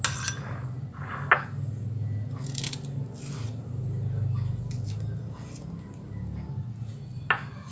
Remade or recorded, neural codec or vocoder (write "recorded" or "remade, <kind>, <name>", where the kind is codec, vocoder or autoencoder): recorded